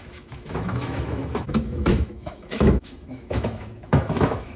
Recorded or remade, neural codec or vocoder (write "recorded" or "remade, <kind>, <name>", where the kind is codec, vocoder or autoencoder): remade, autoencoder, DAC-VAE